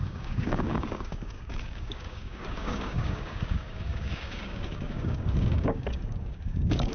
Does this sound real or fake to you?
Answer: fake